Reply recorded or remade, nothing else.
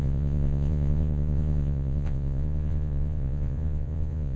remade